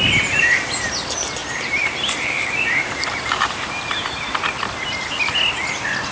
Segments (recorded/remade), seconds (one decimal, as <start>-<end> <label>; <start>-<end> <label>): 0.0-1.4 recorded; 1.4-4.1 remade; 4.1-6.1 recorded